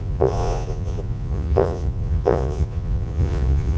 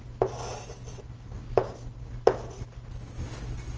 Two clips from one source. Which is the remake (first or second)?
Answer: first